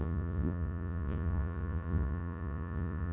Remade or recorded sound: remade